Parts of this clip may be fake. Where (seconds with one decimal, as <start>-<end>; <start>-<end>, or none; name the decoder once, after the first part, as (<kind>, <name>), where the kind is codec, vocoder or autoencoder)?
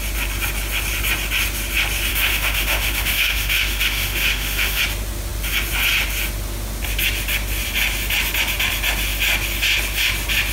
2.1-4.8 (autoencoder, DAC-VAE)